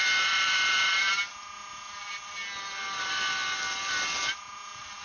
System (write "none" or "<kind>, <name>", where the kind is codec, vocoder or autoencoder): none